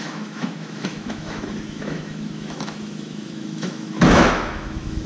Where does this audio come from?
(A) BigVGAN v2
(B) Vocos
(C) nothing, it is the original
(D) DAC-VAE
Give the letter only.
D